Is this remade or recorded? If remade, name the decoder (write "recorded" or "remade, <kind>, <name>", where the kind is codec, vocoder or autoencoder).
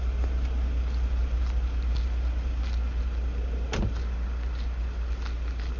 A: recorded